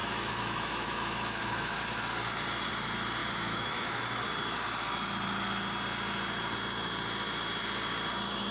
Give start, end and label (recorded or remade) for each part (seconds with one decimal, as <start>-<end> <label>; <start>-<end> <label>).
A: 0.0-1.8 remade; 1.8-3.2 recorded; 3.2-4.0 remade; 4.0-8.5 recorded